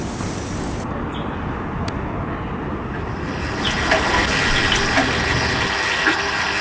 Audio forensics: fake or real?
real